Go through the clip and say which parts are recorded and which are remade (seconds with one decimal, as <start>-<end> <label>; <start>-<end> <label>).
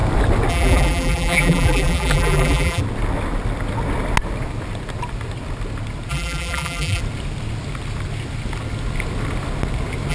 0.0-0.5 recorded; 0.5-2.8 remade; 2.8-6.1 recorded; 6.1-7.0 remade; 7.0-10.1 recorded